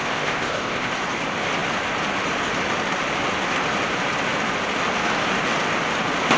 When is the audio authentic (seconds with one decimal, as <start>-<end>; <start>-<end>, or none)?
0.9-6.4